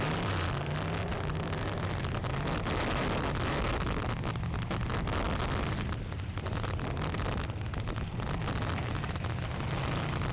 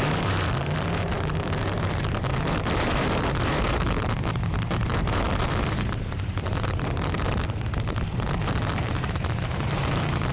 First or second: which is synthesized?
second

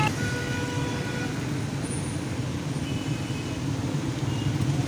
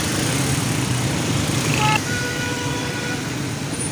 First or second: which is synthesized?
second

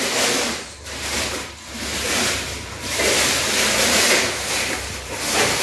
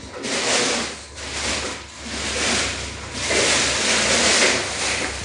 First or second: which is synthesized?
first